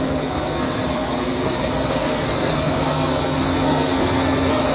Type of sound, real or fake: fake